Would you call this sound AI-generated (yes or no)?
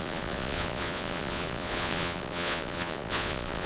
yes